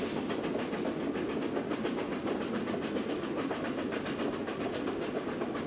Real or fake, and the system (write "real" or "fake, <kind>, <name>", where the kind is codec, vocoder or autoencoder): real